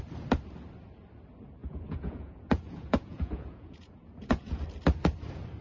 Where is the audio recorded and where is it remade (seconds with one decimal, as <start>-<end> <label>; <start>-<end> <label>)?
0.0-1.6 recorded; 1.6-4.6 remade; 4.6-5.6 recorded